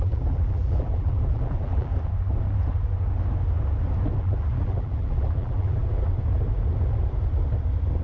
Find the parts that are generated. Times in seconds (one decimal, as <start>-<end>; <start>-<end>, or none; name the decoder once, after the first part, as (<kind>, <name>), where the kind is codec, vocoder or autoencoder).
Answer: 0.0-1.9 (vocoder, BigVGAN v2); 4.2-5.8